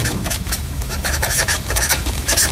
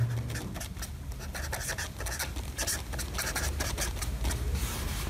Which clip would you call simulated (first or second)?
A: first